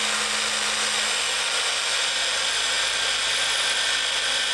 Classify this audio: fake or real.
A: real